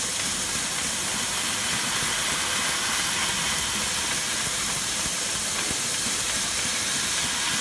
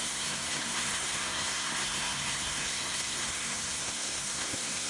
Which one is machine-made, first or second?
second